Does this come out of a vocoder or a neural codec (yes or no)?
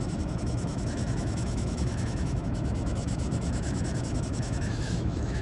yes